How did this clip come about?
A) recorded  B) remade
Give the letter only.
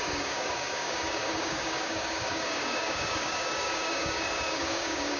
B